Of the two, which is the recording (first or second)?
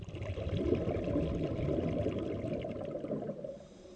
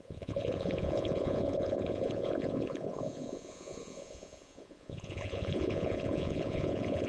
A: first